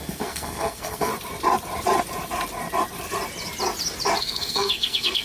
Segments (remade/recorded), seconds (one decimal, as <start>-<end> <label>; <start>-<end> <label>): 0.0-1.1 remade; 1.1-4.2 recorded; 4.2-5.2 remade